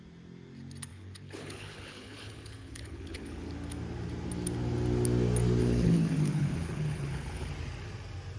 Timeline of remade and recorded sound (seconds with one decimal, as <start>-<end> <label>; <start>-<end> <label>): 0.0-0.9 recorded; 0.9-3.5 remade; 3.5-5.6 recorded; 5.6-7.5 remade; 7.5-8.4 recorded